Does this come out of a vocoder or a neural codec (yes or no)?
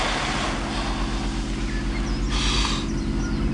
no